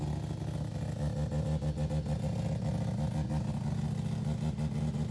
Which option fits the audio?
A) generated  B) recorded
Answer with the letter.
B